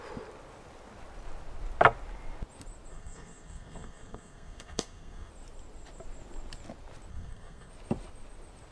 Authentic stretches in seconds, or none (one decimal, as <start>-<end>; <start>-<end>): 0.0-2.9; 5.3-7.1; 7.7-8.7